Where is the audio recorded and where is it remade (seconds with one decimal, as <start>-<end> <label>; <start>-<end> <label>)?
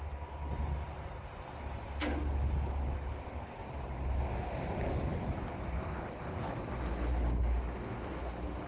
0.0-3.6 recorded; 3.6-4.2 remade; 4.2-8.7 recorded